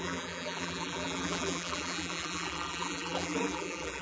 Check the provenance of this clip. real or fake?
fake